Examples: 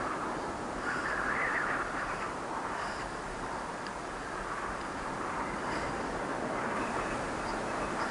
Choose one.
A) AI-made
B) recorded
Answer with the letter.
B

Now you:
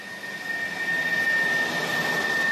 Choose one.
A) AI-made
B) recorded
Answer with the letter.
B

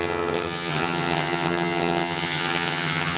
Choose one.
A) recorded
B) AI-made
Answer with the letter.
B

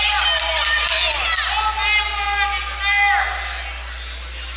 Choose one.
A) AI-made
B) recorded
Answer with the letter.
B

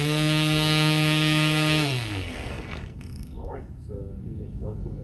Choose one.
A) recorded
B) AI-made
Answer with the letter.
B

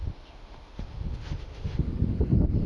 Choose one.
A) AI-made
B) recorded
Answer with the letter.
A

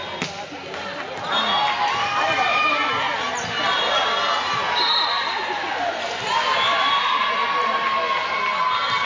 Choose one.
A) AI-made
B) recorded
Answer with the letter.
B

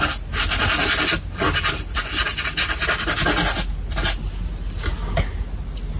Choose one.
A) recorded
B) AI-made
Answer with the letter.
A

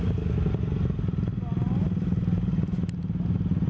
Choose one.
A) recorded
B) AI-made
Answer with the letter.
A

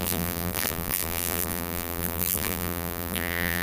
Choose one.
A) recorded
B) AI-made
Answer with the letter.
B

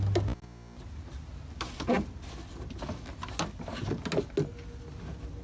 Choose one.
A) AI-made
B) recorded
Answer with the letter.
B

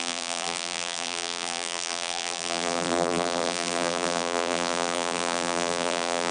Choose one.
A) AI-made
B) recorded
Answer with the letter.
A